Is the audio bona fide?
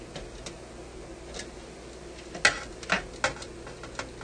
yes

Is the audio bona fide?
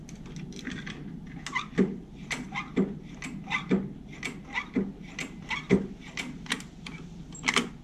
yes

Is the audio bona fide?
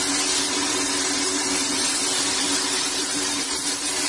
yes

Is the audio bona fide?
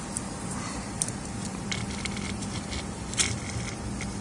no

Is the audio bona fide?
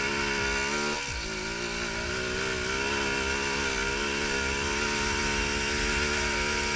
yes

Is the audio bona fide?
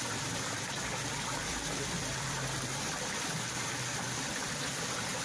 no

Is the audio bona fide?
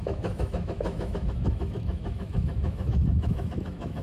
no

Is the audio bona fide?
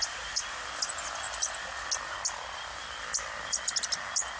yes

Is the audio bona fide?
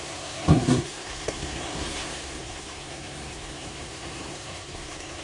no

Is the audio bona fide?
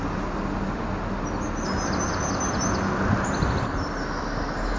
yes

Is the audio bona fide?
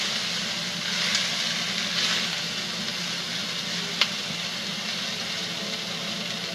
yes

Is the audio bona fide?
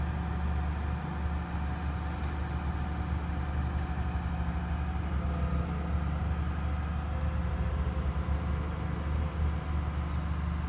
yes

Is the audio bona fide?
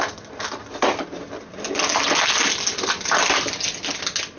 yes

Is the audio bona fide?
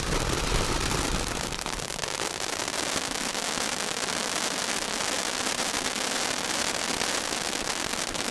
yes